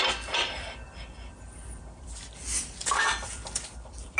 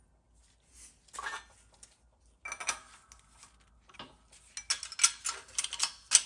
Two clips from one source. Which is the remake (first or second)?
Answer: first